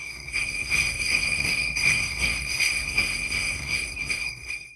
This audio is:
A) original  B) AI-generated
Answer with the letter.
B